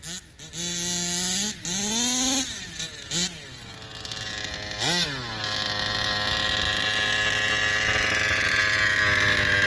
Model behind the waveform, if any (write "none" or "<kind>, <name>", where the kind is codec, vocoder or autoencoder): none